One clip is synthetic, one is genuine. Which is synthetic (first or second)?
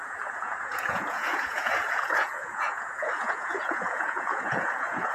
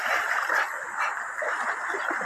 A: first